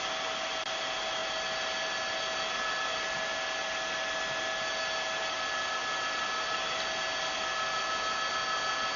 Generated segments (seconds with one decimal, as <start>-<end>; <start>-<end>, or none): none